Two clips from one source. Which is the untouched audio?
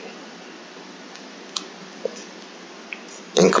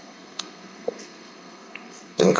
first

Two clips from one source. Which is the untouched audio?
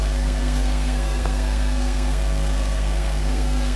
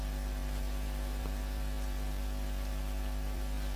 second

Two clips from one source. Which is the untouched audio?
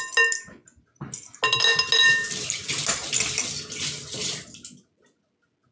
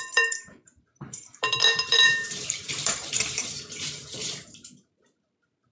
first